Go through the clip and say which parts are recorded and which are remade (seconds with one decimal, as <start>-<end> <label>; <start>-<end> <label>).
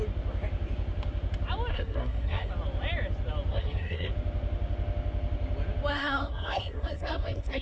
0.0-1.7 recorded; 1.7-2.5 remade; 2.5-3.5 recorded; 3.5-4.1 remade; 4.1-5.9 recorded; 5.9-7.6 remade